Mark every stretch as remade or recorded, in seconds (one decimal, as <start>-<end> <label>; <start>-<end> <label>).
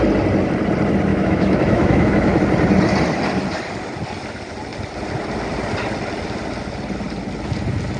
0.0-1.1 recorded; 1.1-2.4 remade; 2.4-8.0 recorded